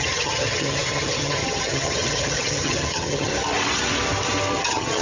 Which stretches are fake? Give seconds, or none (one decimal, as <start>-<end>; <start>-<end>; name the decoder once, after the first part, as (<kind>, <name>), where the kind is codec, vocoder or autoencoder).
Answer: 0.0-3.3 (vocoder, HiFi-GAN); 4.6-5.0